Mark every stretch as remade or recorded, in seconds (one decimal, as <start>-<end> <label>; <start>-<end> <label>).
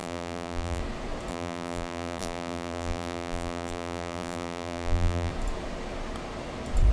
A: 0.0-0.8 remade; 0.8-1.3 recorded; 1.3-5.3 remade; 5.3-6.9 recorded